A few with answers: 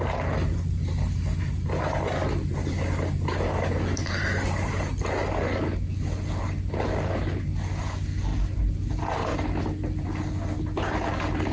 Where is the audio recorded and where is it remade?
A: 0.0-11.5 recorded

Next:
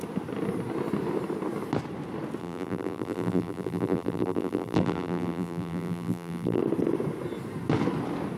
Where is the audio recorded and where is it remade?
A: 0.0-2.4 recorded; 2.4-6.6 remade; 6.6-8.4 recorded